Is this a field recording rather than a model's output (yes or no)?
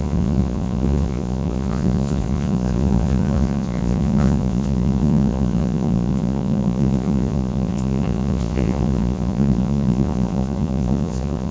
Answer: no